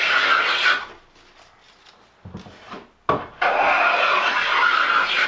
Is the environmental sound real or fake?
real